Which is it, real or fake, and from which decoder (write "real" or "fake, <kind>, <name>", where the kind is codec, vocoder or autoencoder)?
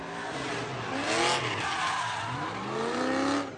real